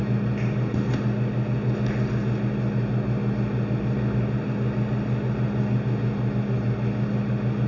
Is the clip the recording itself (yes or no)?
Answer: yes